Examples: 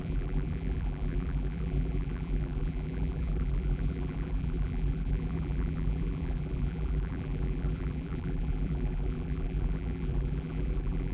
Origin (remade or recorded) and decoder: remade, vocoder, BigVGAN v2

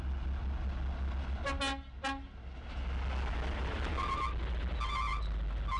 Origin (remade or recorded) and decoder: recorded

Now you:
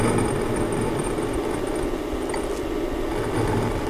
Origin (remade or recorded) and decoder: recorded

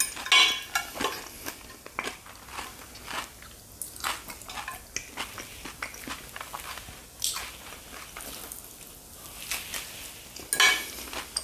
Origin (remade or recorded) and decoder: recorded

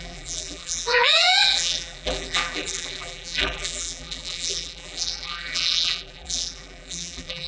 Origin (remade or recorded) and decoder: remade, vocoder, BigVGAN v2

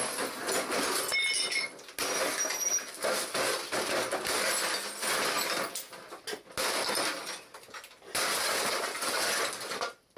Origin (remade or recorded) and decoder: recorded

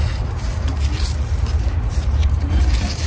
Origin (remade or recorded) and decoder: remade, vocoder, BigVGAN v2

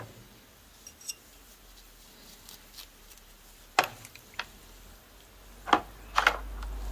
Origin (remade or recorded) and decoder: recorded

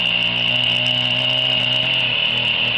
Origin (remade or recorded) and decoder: recorded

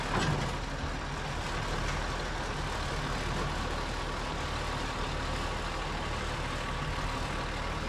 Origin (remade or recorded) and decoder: recorded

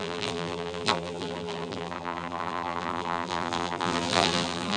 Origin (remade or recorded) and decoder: remade, vocoder, BigVGAN v2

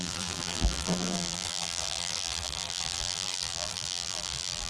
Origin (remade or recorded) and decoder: remade, vocoder, BigVGAN v2